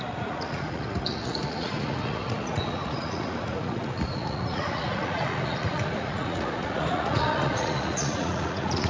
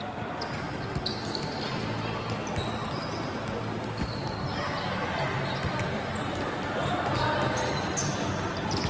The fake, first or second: first